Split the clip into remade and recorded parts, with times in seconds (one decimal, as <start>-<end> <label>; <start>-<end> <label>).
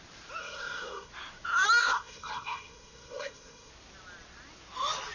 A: 0.0-0.4 recorded; 0.4-1.1 remade; 1.1-1.8 recorded; 1.8-3.7 remade; 3.7-5.1 recorded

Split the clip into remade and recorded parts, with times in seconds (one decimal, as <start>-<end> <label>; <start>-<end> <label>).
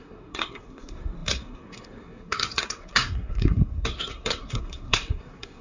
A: 0.0-5.6 remade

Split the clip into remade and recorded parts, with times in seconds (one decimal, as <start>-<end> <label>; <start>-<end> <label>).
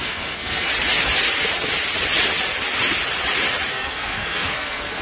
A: 0.0-0.7 remade; 0.7-3.7 recorded; 3.7-5.0 remade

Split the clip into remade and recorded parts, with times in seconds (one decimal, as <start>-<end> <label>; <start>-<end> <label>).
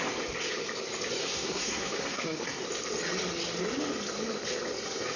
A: 0.0-1.2 recorded; 1.2-2.6 remade; 2.6-5.2 recorded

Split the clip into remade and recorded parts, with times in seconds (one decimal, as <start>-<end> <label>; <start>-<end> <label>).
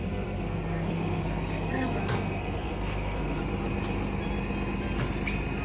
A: 0.0-3.4 remade; 3.4-5.6 recorded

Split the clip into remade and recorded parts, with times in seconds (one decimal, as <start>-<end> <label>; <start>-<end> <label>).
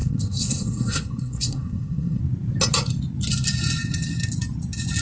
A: 0.0-2.2 remade; 2.2-5.0 recorded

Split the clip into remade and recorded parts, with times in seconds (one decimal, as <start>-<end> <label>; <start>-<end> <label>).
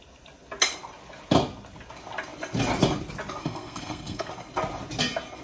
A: 0.0-3.4 recorded; 3.4-4.3 remade; 4.3-5.4 recorded